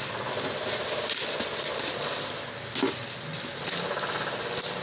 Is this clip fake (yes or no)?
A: no